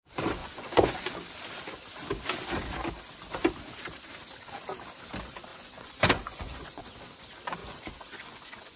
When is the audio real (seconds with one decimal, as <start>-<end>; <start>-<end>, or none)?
0.0-0.4; 1.1-5.5; 6.8-7.6